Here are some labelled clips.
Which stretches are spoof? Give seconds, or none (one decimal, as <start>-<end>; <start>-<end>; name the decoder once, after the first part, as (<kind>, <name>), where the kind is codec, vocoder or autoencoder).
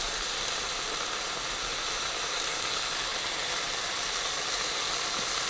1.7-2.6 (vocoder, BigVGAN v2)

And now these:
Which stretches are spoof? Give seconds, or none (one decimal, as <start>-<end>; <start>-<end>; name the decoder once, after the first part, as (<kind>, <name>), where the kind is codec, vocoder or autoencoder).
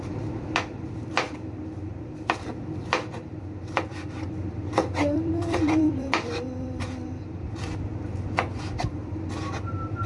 0.0-10.1 (vocoder, BigVGAN v2)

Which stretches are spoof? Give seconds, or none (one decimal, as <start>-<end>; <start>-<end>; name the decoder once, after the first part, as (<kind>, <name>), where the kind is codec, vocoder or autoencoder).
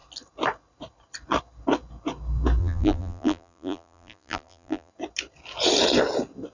2.6-4.9 (vocoder, BigVGAN v2)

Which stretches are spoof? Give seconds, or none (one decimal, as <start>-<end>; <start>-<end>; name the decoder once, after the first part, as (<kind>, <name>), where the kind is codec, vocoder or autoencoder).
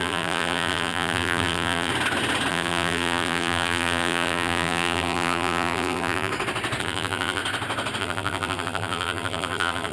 0.0-1.9 (vocoder, BigVGAN v2); 2.5-6.3; 6.8-7.4; 8.0-9.9